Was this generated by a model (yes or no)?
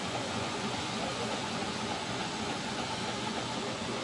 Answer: yes